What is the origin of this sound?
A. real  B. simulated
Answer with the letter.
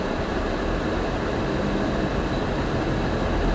A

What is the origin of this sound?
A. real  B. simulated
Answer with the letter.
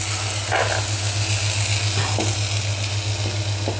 A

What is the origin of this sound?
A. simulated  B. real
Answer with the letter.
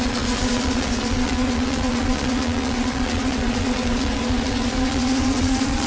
A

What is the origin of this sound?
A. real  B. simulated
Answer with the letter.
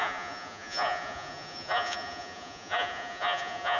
B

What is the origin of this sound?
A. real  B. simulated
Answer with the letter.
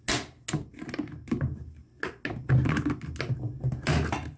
A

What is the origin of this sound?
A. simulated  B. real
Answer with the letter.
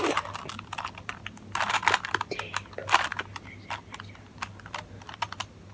B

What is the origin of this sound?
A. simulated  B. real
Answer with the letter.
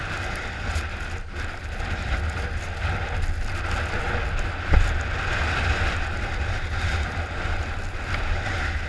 B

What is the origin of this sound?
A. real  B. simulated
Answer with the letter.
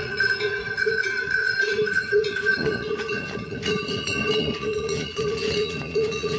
B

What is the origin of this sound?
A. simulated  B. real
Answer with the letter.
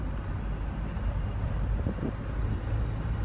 B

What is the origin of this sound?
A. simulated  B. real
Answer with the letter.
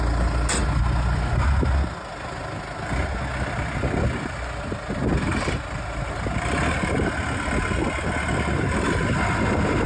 B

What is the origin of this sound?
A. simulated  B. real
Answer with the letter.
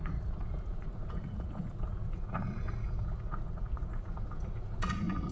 A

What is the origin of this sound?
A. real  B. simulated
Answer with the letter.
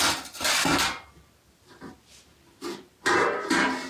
A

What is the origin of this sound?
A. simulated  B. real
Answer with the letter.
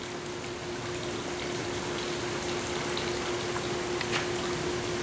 B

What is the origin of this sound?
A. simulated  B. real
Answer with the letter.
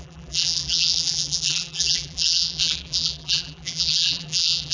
A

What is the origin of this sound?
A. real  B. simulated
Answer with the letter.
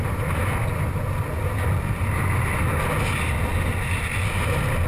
A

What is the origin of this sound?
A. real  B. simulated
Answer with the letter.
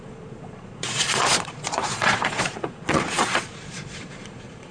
B